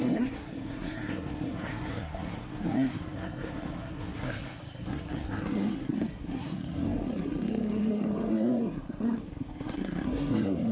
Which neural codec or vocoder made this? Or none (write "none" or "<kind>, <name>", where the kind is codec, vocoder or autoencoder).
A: codec, SNAC